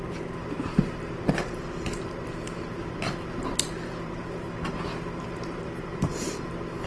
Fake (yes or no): yes